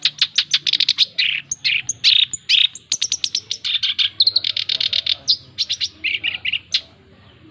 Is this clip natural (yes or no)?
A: yes